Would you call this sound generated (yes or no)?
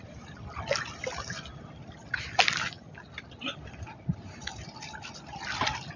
no